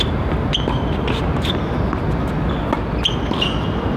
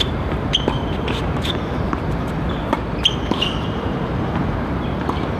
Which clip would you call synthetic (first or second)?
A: second